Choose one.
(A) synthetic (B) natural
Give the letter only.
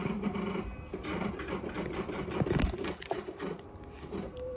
A